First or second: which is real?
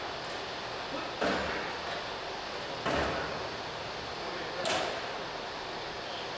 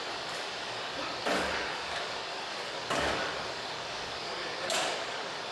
first